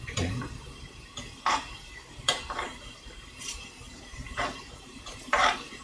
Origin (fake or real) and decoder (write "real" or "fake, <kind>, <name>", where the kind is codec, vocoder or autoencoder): fake, vocoder, BigVGAN v2